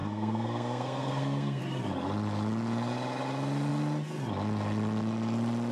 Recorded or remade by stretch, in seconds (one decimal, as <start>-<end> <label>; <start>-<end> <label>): 0.0-1.6 remade; 1.6-5.7 recorded

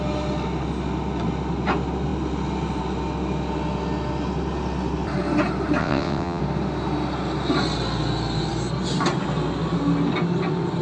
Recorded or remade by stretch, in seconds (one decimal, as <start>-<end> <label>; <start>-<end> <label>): 0.0-5.8 recorded; 5.8-6.4 remade; 6.4-10.8 recorded

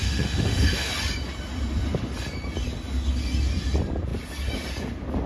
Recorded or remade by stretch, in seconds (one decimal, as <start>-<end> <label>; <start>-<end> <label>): 0.0-0.9 remade; 0.9-5.3 recorded